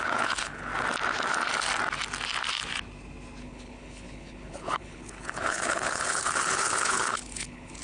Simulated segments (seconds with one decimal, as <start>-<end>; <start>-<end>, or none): 0.0-0.7; 3.4-7.8